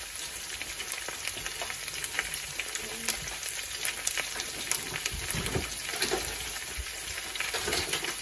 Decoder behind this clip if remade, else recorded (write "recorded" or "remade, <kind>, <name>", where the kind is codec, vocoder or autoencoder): recorded